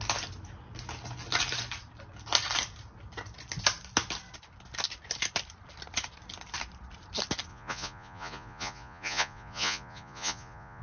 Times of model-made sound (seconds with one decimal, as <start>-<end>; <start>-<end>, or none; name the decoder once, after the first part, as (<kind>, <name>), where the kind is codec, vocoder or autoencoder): 7.5-10.8 (vocoder, Vocos)